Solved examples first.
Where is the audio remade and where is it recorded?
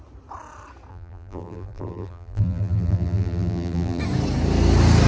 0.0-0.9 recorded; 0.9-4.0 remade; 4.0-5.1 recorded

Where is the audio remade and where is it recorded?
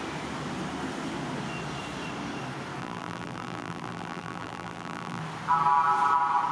0.0-2.8 recorded; 2.8-5.2 remade; 5.2-6.5 recorded